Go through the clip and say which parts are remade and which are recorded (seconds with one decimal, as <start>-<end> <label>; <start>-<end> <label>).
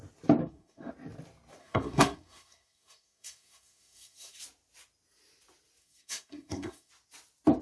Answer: 0.0-0.4 recorded; 0.4-0.9 remade; 0.9-1.6 recorded; 1.6-4.4 remade; 4.4-5.8 recorded; 5.8-6.9 remade; 6.9-7.6 recorded